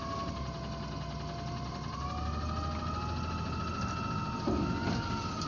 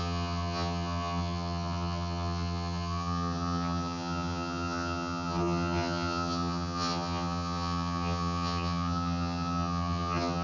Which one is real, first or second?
first